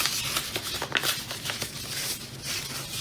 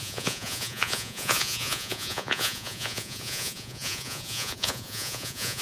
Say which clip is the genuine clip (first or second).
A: first